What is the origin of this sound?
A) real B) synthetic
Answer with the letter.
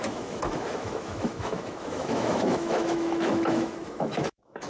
B